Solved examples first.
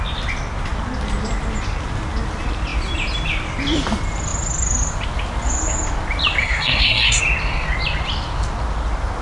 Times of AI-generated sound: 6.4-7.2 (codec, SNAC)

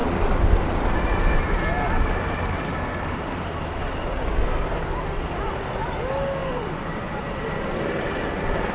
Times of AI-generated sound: 6.4-7.1 (vocoder, Vocos)

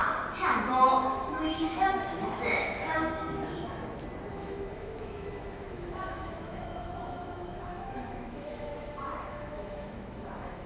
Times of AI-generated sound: 0.7-3.2 (autoencoder, DAC-VAE); 4.3-8.7; 9.3-10.7